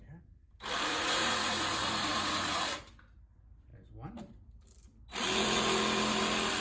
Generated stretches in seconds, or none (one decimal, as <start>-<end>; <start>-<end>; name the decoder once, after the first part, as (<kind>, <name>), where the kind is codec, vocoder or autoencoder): 0.9-2.6 (vocoder, Vocos)